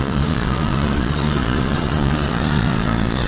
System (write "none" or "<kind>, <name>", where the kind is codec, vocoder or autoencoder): vocoder, Vocos